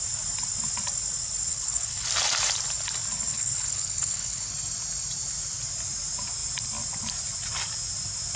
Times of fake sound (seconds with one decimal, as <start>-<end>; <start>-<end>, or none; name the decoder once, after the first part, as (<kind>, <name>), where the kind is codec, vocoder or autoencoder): 1.5-2.1 (codec, HILCodec); 3.3-4.5